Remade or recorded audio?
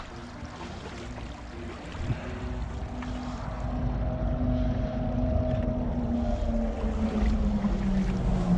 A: recorded